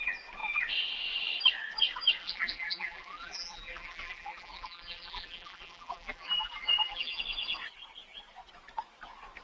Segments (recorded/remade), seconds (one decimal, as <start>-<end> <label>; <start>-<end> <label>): 0.0-2.2 recorded; 2.2-7.2 remade; 7.2-9.4 recorded